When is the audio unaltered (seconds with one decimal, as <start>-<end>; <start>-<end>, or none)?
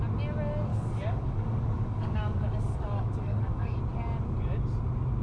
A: 0.0-0.7; 3.8-5.2